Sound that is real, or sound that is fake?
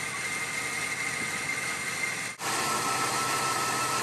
real